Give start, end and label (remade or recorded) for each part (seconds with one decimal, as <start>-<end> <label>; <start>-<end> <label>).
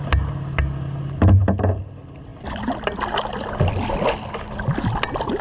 0.0-5.4 recorded